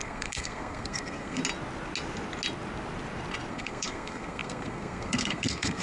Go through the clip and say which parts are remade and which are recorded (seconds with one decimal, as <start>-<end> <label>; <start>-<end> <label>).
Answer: 0.0-1.4 remade; 1.4-3.5 recorded; 3.5-5.8 remade